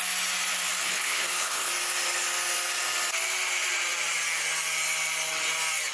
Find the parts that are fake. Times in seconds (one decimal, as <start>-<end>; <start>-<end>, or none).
0.8-1.7

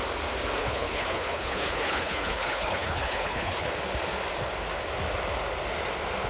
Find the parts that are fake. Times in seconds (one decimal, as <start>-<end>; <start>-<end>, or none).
0.6-3.7

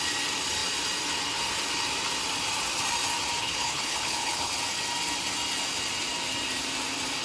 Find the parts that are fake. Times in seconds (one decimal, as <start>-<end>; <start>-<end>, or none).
3.4-4.5